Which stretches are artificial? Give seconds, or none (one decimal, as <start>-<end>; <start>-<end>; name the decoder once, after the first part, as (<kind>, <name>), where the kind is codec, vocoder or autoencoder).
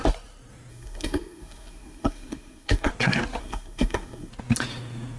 0.7-2.9 (codec, SNAC); 3.4-4.3